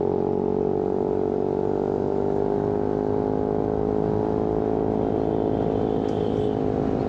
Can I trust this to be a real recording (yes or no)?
yes